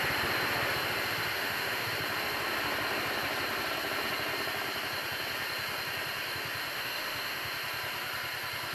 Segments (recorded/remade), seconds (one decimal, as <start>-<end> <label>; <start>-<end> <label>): 0.0-1.3 recorded; 1.3-1.9 remade; 1.9-6.7 recorded; 6.7-7.5 remade; 7.5-8.7 recorded